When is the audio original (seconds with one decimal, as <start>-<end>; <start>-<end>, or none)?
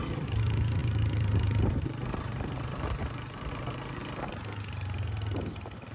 4.0-5.9